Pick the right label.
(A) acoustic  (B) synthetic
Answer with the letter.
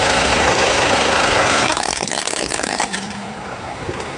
B